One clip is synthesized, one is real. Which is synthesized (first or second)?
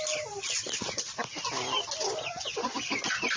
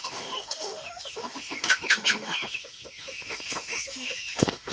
second